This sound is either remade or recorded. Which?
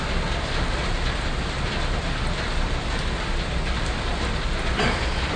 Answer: recorded